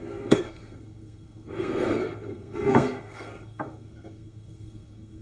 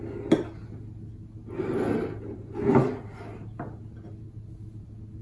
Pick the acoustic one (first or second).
second